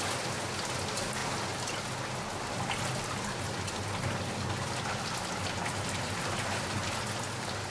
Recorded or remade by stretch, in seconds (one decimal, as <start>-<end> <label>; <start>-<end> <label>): 0.0-7.7 recorded